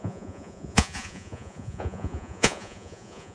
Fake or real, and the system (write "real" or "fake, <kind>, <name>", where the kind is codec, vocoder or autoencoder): fake, vocoder, Vocos